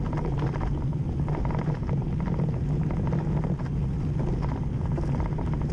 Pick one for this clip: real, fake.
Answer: real